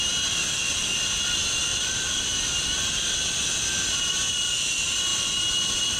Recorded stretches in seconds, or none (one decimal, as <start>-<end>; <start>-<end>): 0.0-1.7; 2.2-6.0